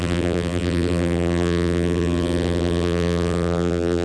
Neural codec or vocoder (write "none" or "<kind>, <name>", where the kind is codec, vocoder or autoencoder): vocoder, BigVGAN v2